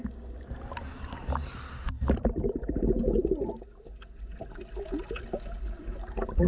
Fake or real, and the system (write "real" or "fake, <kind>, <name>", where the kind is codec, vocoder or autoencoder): real